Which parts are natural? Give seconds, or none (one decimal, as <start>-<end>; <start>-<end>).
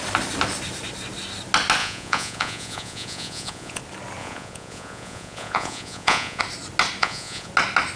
0.0-1.8; 3.8-4.2; 6.4-7.0; 7.5-8.0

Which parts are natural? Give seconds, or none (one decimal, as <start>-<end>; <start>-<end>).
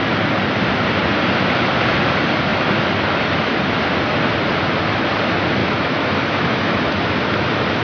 0.0-5.6; 7.0-7.8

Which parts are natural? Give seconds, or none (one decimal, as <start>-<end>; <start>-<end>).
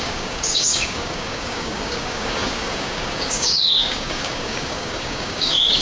none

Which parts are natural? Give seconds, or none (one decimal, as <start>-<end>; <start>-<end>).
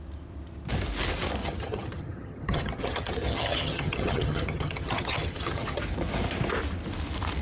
0.0-1.4; 5.8-7.4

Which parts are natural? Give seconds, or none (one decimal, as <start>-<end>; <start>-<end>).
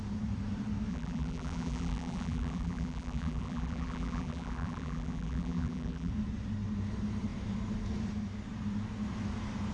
0.0-0.9; 6.1-9.7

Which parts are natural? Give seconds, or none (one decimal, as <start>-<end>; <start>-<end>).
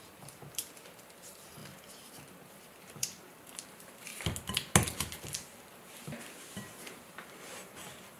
4.1-6.4